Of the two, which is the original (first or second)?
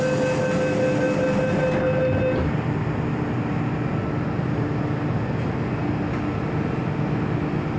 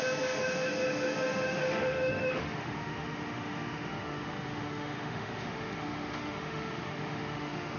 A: first